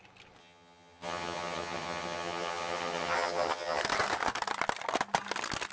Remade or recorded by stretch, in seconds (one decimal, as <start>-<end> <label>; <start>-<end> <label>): 0.0-0.4 recorded; 0.4-3.8 remade; 3.8-5.7 recorded